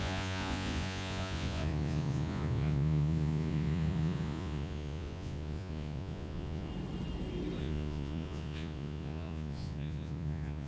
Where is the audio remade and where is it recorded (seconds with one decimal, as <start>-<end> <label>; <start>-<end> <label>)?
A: 0.0-6.7 remade; 6.7-7.6 recorded; 7.6-10.7 remade